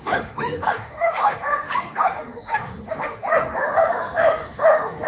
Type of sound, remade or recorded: remade